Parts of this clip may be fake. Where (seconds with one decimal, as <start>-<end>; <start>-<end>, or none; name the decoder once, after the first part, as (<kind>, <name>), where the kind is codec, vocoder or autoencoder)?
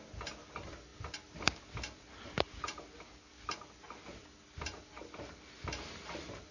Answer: none